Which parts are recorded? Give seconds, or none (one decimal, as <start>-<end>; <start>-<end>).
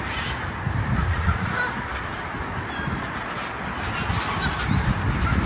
0.0-1.1; 1.6-5.5